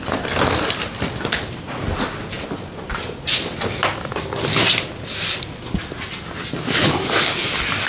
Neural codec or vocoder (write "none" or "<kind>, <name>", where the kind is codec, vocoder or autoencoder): none